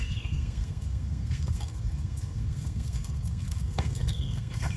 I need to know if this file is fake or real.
fake